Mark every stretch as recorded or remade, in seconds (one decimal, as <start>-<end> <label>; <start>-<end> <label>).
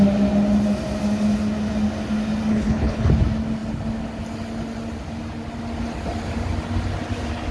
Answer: 0.0-2.5 recorded; 2.5-3.1 remade; 3.1-7.5 recorded